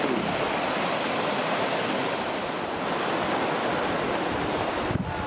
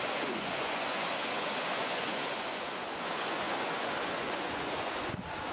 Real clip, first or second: first